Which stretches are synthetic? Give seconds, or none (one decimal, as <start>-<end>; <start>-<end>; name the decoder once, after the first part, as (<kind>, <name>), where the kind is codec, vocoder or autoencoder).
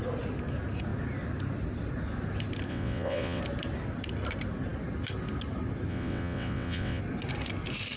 2.7-3.4 (vocoder, WaveNeXt); 5.9-7.0